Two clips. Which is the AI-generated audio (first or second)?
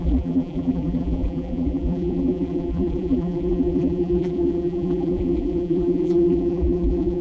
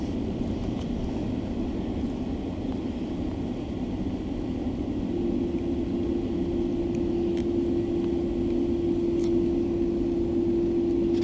first